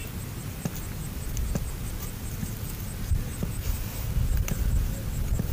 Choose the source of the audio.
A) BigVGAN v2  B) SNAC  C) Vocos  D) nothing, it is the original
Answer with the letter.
D